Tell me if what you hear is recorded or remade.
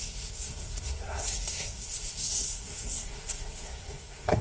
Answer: remade